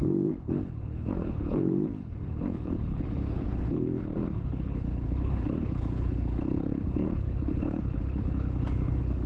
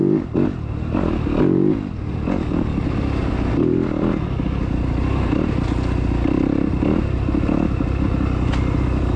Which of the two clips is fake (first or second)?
first